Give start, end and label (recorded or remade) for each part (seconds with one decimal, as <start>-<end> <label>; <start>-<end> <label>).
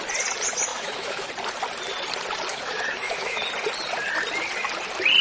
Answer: 0.0-0.7 recorded; 0.7-1.3 remade; 1.3-2.5 recorded; 2.5-3.4 remade; 3.4-5.2 recorded